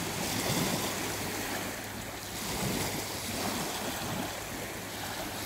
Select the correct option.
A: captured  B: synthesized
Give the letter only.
A